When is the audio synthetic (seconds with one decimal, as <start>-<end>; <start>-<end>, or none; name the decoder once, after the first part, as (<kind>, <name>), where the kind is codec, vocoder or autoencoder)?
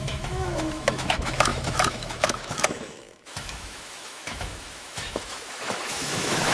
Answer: 0.0-6.5 (autoencoder, DAC-VAE)